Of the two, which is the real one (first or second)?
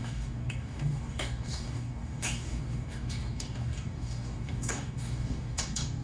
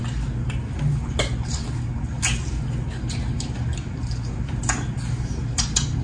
second